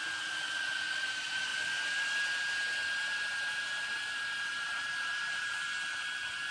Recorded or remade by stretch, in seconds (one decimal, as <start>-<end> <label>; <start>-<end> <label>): 0.0-6.5 recorded